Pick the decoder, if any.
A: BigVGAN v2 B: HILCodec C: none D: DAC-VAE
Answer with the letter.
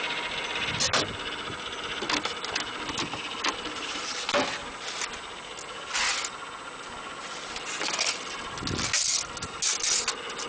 C